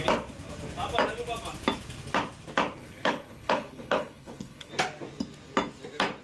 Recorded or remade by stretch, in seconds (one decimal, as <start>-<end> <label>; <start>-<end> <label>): 0.0-2.8 recorded; 2.8-4.7 remade; 4.7-6.2 recorded

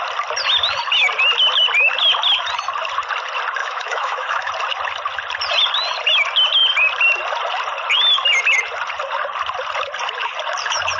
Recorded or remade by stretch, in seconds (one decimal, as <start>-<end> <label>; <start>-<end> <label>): 0.0-3.6 recorded; 3.6-4.5 remade; 4.5-11.0 recorded

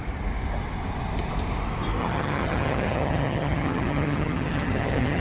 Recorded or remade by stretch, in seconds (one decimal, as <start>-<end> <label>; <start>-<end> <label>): 0.0-2.0 recorded; 2.0-5.2 remade

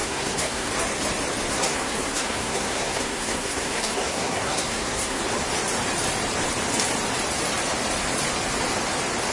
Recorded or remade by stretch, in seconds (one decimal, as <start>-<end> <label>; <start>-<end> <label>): 0.0-0.7 remade; 0.7-1.5 recorded; 1.5-5.2 remade; 5.2-9.3 recorded

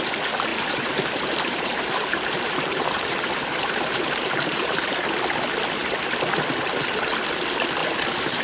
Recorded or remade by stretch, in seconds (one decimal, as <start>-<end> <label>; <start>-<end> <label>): 0.0-0.5 recorded; 0.5-5.1 remade; 5.1-7.8 recorded; 7.8-8.4 remade

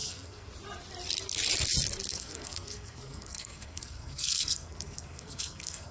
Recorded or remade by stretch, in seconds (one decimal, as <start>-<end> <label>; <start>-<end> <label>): 0.0-0.5 remade; 0.5-2.1 recorded; 2.1-5.9 remade